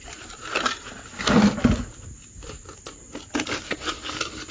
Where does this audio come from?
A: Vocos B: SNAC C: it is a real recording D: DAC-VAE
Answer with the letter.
C